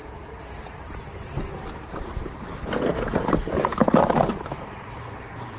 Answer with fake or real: fake